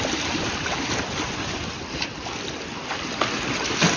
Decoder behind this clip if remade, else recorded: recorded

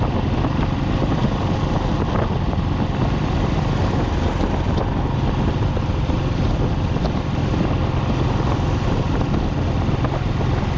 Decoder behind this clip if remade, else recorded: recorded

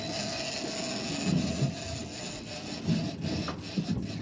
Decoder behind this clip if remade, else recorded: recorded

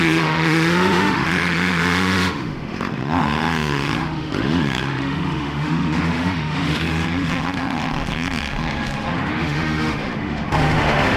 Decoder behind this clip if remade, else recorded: remade, autoencoder, DAC-VAE